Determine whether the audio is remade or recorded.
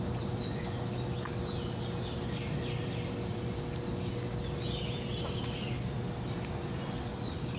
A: recorded